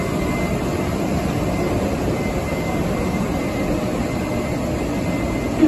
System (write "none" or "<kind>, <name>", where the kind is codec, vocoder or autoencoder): none